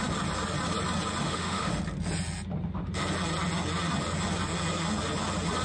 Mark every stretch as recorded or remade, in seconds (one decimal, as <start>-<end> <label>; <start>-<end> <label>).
0.0-1.2 recorded; 1.2-1.7 remade; 1.7-5.6 recorded